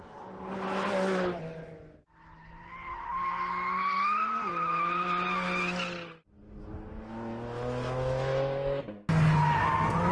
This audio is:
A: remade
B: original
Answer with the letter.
B